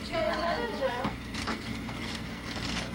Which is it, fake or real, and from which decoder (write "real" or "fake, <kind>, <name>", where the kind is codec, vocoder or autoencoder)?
fake, codec, SNAC